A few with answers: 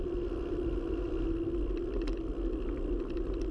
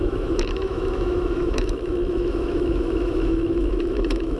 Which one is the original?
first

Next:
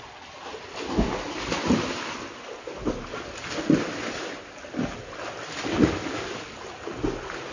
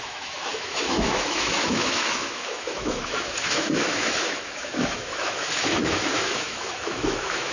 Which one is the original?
first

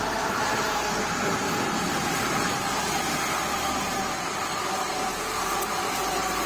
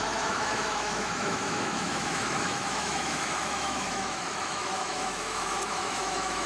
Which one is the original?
first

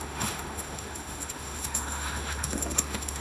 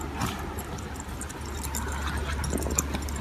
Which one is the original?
second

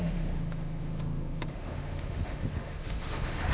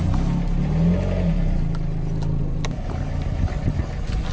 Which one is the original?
second